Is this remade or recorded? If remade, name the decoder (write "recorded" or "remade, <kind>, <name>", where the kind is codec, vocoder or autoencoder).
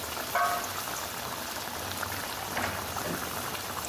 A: recorded